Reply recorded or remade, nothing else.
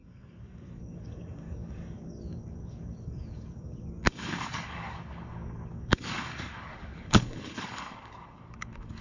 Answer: remade